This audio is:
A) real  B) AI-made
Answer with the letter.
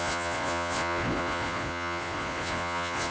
B